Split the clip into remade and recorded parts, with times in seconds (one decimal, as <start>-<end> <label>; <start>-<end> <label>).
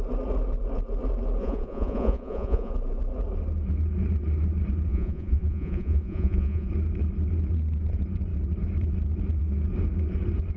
0.0-1.4 recorded; 1.4-2.7 remade; 2.7-4.9 recorded; 4.9-6.7 remade; 6.7-10.6 recorded